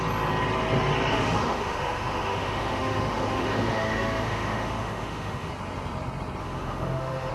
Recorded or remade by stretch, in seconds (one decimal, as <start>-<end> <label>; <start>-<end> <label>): 0.0-1.1 recorded; 1.1-5.5 remade; 5.5-6.4 recorded; 6.4-7.3 remade